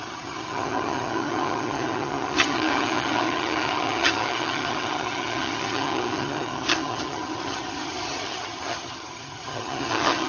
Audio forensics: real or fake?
fake